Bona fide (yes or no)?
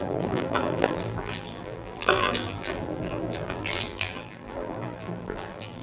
no